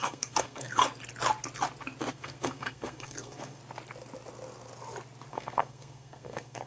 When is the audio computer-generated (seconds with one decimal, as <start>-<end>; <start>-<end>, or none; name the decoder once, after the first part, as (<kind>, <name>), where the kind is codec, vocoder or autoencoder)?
0.0-0.8 (codec, SNAC); 2.1-3.6; 5.3-6.7